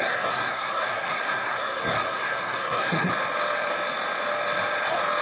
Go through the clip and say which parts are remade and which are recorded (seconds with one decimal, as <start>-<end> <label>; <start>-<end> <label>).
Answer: 0.0-3.1 remade; 3.1-5.2 recorded